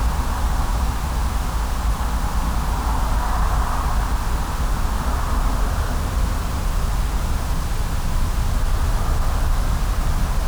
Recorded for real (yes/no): yes